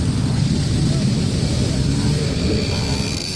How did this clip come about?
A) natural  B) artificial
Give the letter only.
B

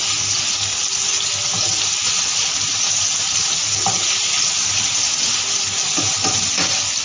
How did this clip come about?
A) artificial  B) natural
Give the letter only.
B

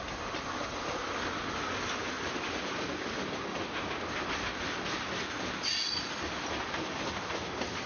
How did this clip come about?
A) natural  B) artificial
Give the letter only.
A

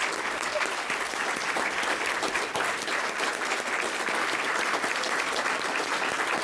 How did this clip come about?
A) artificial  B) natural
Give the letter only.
B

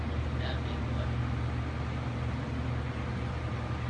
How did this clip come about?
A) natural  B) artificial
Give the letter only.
A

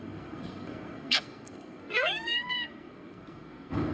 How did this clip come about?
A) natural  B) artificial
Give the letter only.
B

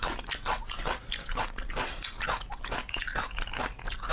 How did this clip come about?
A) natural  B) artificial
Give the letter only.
A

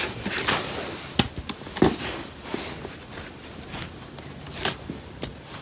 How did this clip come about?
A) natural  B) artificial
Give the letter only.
A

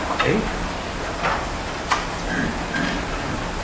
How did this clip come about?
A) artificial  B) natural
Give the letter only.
B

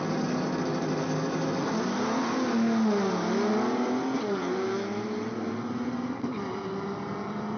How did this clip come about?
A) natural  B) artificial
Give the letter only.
A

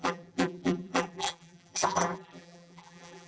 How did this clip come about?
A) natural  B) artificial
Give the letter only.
B